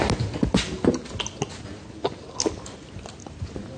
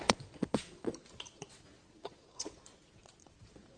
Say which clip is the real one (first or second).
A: first